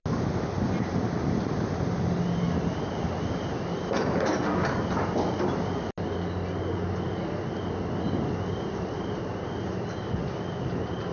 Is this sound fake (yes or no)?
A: no